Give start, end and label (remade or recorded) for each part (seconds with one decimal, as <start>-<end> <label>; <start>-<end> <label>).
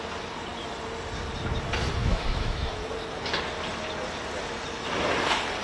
0.0-2.0 recorded; 2.0-2.7 remade; 2.7-5.6 recorded